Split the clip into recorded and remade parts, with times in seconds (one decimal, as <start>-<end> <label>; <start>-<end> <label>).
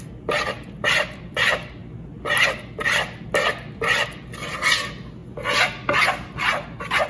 0.0-7.1 recorded